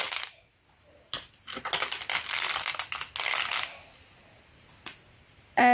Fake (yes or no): no